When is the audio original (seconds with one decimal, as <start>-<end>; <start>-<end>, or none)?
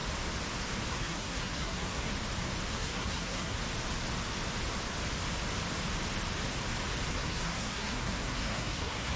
0.0-0.9; 2.1-2.7; 3.6-7.1